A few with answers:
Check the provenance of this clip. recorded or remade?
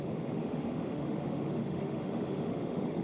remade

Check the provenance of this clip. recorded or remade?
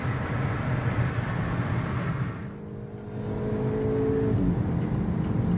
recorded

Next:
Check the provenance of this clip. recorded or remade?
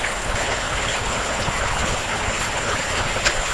remade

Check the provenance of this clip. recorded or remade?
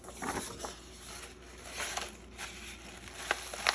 recorded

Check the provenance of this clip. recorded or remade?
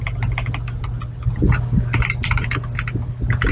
recorded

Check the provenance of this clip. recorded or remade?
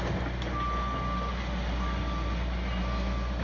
recorded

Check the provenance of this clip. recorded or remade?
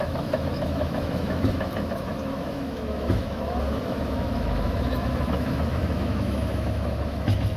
remade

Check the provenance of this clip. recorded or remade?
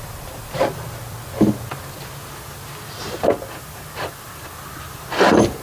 recorded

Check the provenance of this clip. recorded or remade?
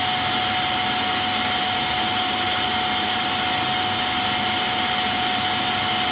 recorded